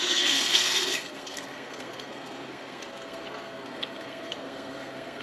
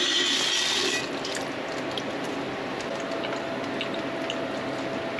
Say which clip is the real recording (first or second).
second